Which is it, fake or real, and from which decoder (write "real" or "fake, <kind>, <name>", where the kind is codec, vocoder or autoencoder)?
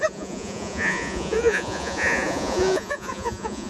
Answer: fake, vocoder, Vocos